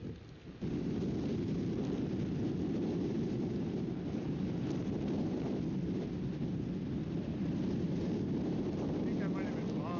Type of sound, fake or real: real